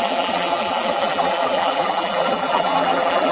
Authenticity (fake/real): fake